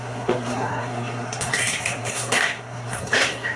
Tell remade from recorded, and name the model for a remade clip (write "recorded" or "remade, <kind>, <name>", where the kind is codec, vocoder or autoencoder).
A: remade, codec, SNAC